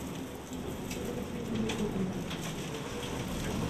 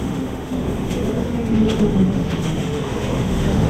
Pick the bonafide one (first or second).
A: first